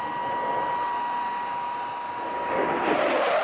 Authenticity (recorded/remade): recorded